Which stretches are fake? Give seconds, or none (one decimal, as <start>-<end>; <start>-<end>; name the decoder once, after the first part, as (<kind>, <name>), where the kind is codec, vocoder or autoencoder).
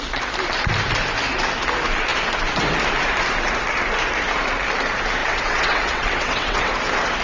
5.2-6.7 (vocoder, WaveNeXt)